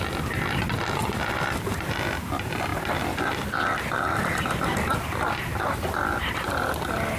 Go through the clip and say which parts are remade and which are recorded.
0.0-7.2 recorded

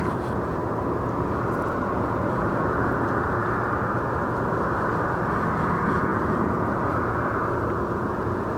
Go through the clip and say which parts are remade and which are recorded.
0.0-0.6 remade; 0.6-1.5 recorded; 1.5-3.4 remade; 3.4-5.1 recorded; 5.1-8.6 remade